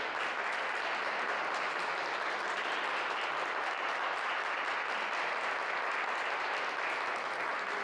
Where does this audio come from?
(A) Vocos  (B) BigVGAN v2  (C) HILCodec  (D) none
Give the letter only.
D